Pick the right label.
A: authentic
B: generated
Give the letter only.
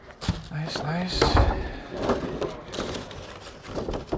A